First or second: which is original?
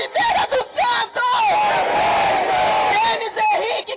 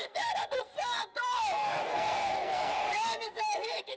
first